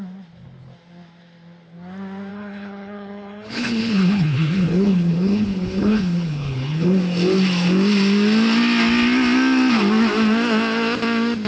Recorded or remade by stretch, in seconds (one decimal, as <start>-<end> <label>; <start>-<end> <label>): 0.0-2.3 recorded; 2.3-7.0 remade; 7.0-11.5 recorded

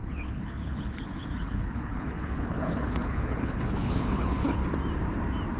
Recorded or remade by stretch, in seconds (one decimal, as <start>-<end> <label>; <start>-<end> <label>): 0.0-4.6 remade; 4.6-5.6 recorded

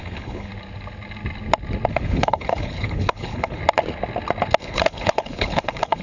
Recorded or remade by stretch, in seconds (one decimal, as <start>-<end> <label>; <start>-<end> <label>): 0.0-0.5 remade; 0.5-1.9 recorded; 1.9-3.6 remade; 3.6-4.6 recorded; 4.6-6.0 remade

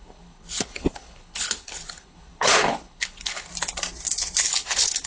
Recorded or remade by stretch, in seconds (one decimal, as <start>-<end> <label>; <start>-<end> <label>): 0.0-3.5 remade; 3.5-4.4 recorded; 4.4-5.1 remade

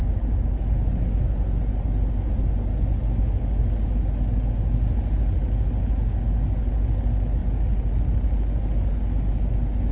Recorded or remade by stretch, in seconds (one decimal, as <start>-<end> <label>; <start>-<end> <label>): 0.0-9.9 recorded